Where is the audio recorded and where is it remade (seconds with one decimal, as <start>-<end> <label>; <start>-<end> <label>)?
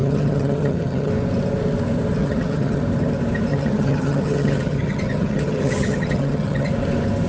0.0-1.1 remade; 1.1-2.2 recorded; 2.2-2.8 remade; 2.8-3.5 recorded; 3.5-6.7 remade; 6.7-7.3 recorded